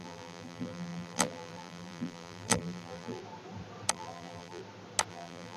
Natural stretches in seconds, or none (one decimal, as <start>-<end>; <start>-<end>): 3.2-3.9; 4.6-5.1